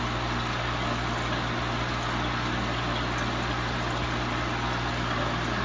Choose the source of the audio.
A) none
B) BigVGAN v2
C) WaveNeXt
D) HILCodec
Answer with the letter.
A